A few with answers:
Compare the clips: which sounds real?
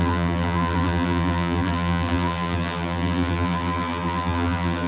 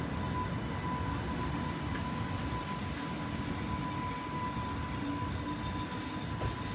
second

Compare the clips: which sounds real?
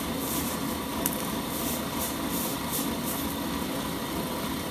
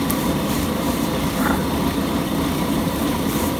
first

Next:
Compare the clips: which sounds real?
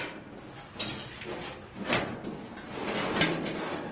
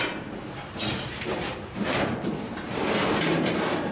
first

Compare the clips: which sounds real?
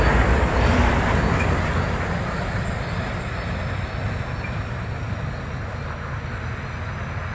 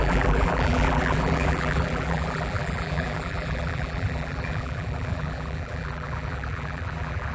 first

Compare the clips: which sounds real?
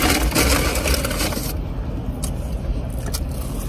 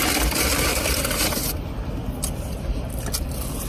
first